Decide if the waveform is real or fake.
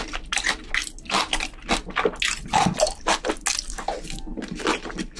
real